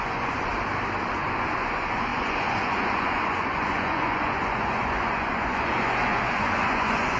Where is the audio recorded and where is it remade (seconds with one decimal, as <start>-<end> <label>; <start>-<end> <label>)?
0.0-0.5 remade; 0.5-1.1 recorded; 1.1-7.2 remade